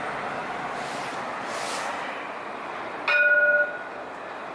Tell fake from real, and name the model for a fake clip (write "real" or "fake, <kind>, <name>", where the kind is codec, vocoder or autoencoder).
real